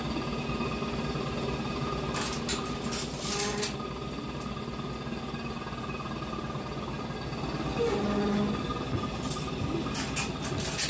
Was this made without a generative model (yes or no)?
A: yes